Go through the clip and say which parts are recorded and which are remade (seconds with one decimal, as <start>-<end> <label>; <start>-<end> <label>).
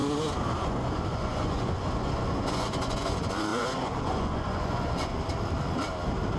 0.0-0.6 recorded; 0.6-5.1 remade; 5.1-6.4 recorded